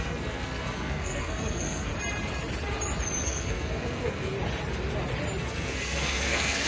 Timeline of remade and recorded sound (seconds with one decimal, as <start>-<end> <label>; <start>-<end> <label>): 0.0-1.9 remade; 1.9-3.2 recorded; 3.2-4.3 remade; 4.3-5.4 recorded; 5.4-6.7 remade